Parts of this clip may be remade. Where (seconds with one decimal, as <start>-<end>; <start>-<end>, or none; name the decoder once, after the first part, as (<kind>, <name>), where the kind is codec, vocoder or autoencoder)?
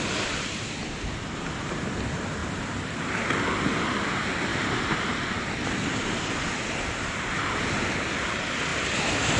2.4-3.1 (vocoder, BigVGAN v2); 4.5-5.4; 8.7-9.4